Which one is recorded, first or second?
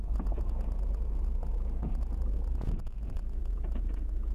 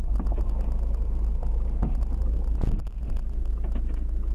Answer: second